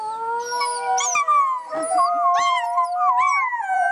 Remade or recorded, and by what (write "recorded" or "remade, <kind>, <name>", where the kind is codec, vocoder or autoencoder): recorded